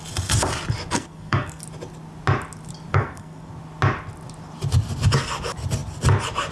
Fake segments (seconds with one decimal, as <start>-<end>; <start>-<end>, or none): 0.9-1.6; 2.9-3.5